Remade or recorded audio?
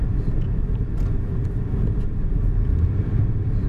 recorded